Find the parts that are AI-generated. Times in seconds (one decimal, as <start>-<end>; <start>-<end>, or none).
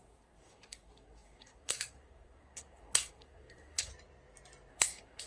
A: 0.0-3.9; 4.7-5.3